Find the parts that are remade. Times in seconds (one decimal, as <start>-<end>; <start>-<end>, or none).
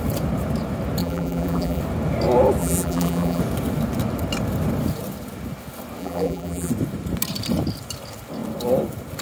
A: 1.0-1.8; 2.6-3.4; 6.0-6.7